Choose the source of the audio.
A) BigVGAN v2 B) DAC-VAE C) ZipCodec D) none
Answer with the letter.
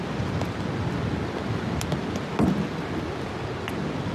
D